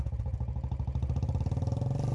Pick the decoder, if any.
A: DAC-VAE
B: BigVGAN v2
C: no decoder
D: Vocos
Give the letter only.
B